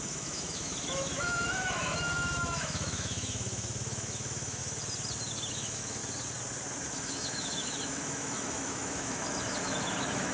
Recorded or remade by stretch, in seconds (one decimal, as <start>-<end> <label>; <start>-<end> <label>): 0.0-4.6 remade; 4.6-5.5 recorded; 5.5-6.0 remade; 6.0-6.9 recorded; 6.9-10.3 remade